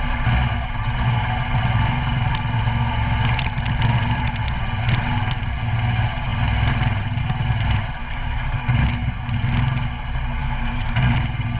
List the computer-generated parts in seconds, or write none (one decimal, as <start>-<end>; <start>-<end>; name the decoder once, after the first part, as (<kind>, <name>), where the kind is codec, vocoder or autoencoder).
8.0-8.6 (codec, DAC); 10.4-11.1